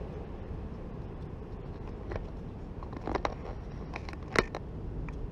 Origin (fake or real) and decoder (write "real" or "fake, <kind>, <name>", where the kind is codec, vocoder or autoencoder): real